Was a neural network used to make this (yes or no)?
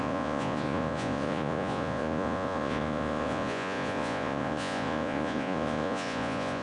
yes